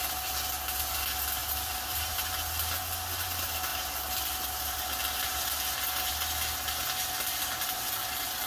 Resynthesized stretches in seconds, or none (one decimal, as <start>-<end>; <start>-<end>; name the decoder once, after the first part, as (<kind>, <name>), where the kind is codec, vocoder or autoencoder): 1.4-2.3 (vocoder, BigVGAN v2)

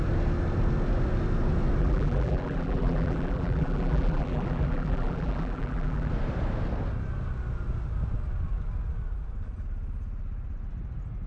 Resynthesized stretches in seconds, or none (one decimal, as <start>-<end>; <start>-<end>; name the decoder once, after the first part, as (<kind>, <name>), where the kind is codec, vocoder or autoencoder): 1.8-6.1 (vocoder, BigVGAN v2)